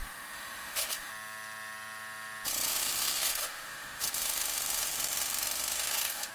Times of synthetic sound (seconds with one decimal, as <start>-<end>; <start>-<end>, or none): 0.0-1.1; 2.7-6.3